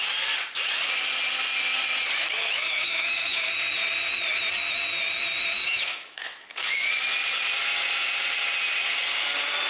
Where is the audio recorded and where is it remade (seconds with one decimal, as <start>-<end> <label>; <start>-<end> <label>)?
0.0-2.2 recorded; 2.2-3.5 remade; 3.5-5.6 recorded; 5.6-6.9 remade; 6.9-9.7 recorded